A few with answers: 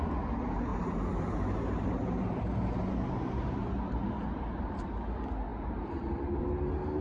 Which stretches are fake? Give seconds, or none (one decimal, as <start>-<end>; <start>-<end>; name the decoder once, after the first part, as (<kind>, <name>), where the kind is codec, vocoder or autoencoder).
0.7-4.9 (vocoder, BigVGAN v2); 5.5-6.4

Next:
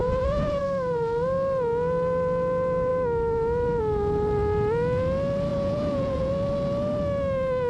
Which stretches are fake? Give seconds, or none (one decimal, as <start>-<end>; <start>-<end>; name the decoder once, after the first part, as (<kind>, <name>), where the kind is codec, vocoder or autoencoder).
0.0-0.6 (vocoder, Vocos); 5.5-6.3

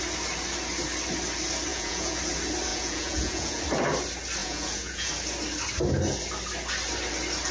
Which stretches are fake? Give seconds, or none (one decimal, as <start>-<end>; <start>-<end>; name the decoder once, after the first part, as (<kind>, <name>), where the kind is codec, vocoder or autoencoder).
1.7-2.2 (vocoder, Vocos); 2.7-3.6; 4.4-5.1

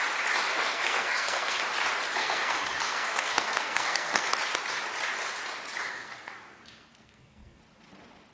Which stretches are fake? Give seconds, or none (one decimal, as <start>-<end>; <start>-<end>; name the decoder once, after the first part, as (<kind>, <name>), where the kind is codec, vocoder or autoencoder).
0.5-1.6 (codec, SNAC); 2.2-4.3; 5.9-7.6

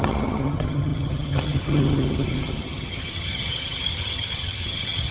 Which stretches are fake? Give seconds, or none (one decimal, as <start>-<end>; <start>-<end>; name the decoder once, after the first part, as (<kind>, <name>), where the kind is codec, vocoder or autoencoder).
0.0-5.1 (vocoder, HiFi-GAN)

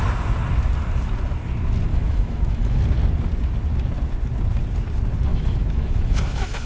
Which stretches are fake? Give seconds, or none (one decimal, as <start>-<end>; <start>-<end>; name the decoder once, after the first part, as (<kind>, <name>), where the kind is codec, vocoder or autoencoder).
1.9-2.8 (autoencoder, DAC-VAE); 5.3-6.7